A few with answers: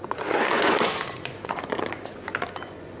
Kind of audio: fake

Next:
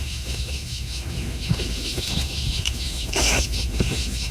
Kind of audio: fake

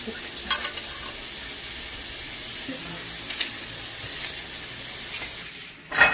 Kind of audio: real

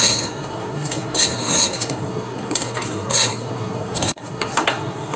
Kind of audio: fake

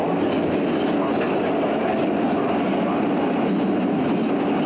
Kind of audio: real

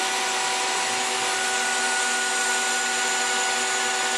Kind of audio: real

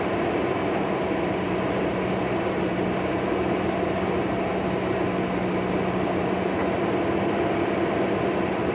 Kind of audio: real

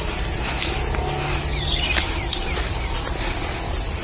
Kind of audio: real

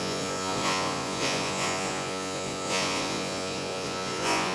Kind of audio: fake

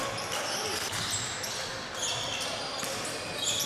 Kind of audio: real